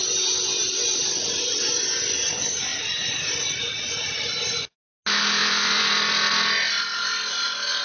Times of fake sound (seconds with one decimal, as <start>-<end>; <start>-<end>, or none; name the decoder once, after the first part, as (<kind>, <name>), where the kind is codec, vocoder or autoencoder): 0.6-1.8 (vocoder, BigVGAN v2); 2.7-3.6; 5.4-5.9